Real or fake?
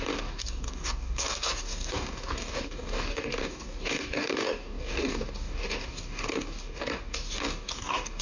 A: fake